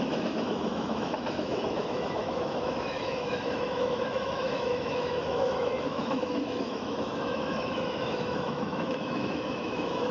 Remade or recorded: remade